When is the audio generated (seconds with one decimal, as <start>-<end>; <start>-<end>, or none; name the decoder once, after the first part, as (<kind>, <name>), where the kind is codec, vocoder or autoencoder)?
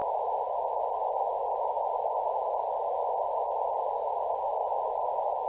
none